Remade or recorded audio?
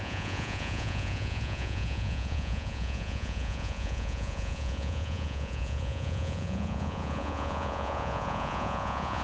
remade